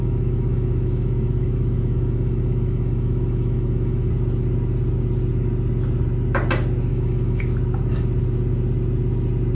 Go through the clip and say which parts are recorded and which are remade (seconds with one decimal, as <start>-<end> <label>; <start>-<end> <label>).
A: 0.0-4.1 remade; 4.1-6.9 recorded; 6.9-7.4 remade; 7.4-9.5 recorded